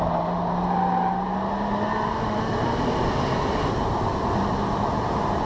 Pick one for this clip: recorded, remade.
recorded